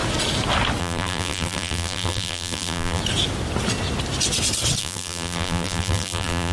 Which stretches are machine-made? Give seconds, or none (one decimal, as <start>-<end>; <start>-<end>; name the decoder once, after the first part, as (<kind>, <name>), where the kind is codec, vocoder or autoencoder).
0.8-3.0 (vocoder, BigVGAN v2); 4.8-6.5

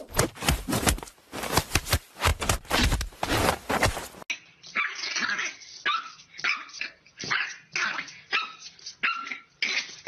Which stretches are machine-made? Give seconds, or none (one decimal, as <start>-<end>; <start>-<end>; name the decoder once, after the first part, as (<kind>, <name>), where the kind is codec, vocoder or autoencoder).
none